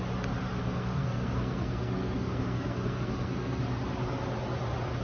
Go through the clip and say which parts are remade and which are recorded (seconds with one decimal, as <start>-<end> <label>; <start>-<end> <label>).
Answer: 0.0-0.6 recorded; 0.6-3.6 remade; 3.6-5.0 recorded